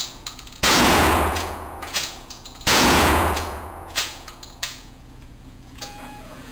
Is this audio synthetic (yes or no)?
yes